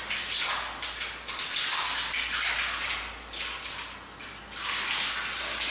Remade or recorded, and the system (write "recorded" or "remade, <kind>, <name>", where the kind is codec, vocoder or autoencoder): recorded